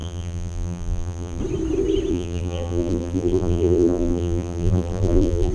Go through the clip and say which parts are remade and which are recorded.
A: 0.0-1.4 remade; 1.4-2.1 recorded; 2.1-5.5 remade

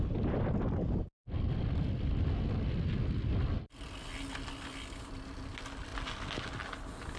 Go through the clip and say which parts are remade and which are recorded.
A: 0.0-7.2 recorded